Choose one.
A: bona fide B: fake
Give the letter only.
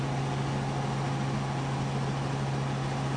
A